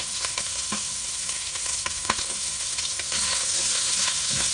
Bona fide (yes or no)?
no